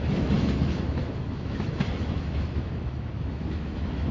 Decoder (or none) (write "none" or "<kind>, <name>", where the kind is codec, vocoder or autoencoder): autoencoder, DAC-VAE